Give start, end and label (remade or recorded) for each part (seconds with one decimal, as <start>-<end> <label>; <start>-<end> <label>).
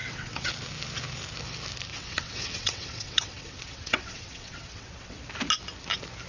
0.0-0.5 remade; 0.5-1.9 recorded; 1.9-5.2 remade; 5.2-6.3 recorded